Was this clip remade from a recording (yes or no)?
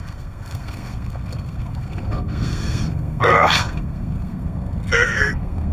yes